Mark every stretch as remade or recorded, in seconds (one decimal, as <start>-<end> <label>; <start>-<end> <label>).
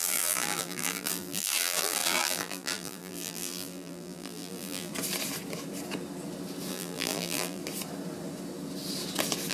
0.0-4.9 remade; 4.9-6.7 recorded; 6.7-7.6 remade; 7.6-9.5 recorded